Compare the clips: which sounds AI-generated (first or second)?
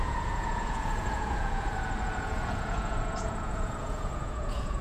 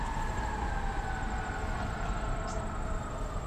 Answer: first